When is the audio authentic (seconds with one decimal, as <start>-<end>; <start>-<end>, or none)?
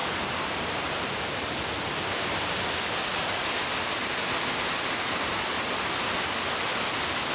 0.0-7.3